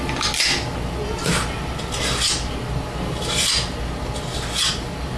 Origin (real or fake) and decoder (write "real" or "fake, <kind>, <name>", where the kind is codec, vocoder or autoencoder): real